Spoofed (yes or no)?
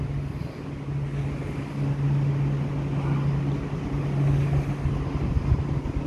no